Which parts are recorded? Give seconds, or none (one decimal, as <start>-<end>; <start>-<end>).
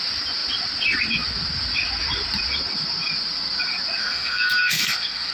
0.0-4.0